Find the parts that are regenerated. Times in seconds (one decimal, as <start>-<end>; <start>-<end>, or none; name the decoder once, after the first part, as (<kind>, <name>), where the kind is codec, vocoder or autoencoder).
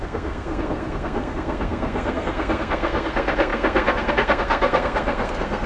0.0-5.7 (codec, SNAC)